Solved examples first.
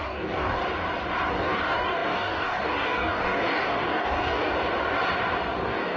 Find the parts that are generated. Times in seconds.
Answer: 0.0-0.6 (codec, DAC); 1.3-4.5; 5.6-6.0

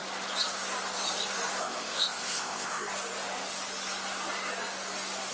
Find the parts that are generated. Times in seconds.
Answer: 1.6-2.9 (codec, ZipCodec)

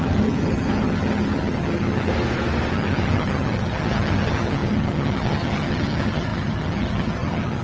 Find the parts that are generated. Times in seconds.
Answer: 0.0-2.1 (vocoder, HiFi-GAN); 2.7-7.6

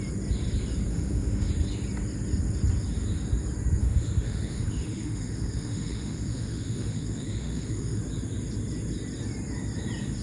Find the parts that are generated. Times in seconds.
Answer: 0.9-1.5 (autoencoder, DAC-VAE); 3.8-8.0